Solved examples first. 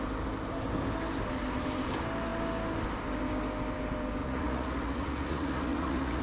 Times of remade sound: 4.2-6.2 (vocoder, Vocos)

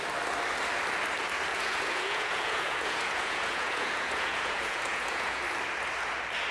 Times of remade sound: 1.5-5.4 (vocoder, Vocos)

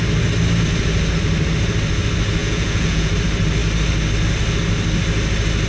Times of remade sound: 2.4-3.1 (vocoder, Vocos)